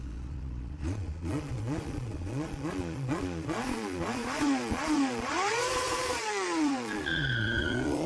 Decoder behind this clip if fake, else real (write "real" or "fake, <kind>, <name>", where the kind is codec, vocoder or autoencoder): fake, vocoder, Vocos